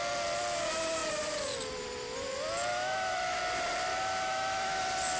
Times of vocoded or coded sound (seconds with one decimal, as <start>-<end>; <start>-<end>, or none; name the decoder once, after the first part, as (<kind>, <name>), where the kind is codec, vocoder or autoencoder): 2.7-3.4 (autoencoder, DAC-VAE); 3.9-4.8